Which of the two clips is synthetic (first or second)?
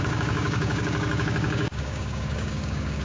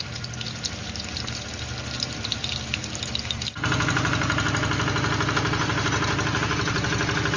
first